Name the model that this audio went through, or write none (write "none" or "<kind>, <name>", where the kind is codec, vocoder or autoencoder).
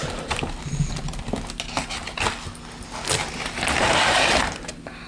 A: none